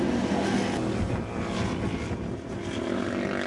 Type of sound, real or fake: real